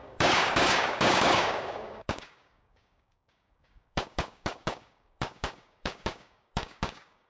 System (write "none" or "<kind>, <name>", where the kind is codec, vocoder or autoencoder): codec, DAC